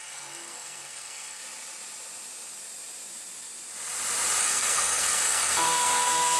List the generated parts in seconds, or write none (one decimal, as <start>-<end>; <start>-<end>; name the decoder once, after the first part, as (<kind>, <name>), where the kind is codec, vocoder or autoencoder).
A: 0.0-1.4 (codec, SNAC); 4.4-6.4